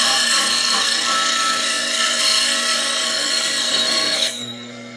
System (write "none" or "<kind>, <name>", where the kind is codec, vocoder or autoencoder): codec, SNAC